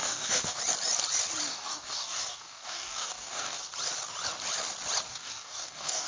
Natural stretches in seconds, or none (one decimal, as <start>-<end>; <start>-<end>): 0.6-1.5; 3.7-5.1